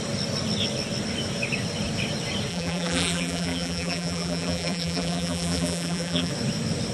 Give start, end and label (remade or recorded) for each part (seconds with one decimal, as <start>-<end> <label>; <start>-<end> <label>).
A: 0.0-2.5 recorded; 2.5-6.3 remade; 6.3-6.9 recorded

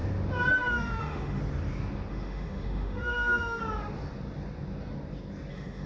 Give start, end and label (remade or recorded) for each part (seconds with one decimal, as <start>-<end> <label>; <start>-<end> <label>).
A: 0.0-0.5 recorded; 0.5-1.4 remade; 1.4-2.1 recorded; 2.1-3.6 remade; 3.6-5.5 recorded; 5.5-5.9 remade

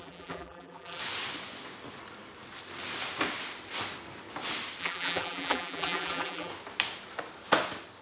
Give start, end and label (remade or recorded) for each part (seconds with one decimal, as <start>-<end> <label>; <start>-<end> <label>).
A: 0.0-1.0 remade; 1.0-4.8 recorded; 4.8-6.5 remade; 6.5-8.0 recorded

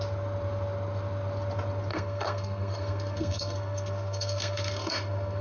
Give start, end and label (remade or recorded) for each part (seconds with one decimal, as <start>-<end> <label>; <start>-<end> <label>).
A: 0.0-1.9 recorded; 1.9-5.4 remade

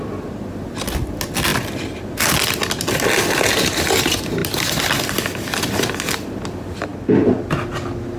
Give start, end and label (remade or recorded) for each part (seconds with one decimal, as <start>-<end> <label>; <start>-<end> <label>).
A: 0.0-8.2 recorded

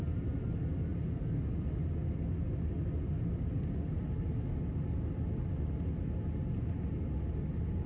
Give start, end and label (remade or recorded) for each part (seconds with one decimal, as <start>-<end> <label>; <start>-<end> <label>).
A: 0.0-7.9 recorded

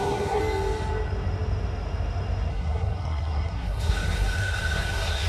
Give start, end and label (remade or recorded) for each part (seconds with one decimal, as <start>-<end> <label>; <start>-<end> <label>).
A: 0.0-0.4 remade; 0.4-2.5 recorded; 2.5-5.3 remade